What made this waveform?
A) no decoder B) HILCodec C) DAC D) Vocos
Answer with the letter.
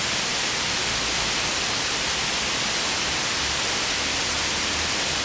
A